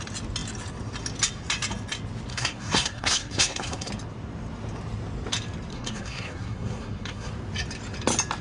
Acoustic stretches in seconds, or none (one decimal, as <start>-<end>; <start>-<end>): 0.0-2.3; 3.9-5.7; 7.3-8.4